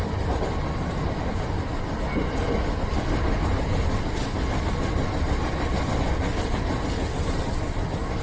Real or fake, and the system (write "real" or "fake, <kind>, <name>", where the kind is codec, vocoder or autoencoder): real